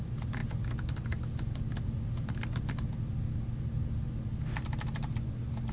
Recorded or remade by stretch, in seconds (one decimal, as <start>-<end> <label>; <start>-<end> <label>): 0.0-5.7 recorded